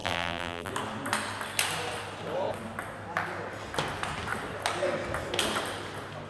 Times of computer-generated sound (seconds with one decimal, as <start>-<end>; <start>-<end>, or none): 0.0-0.7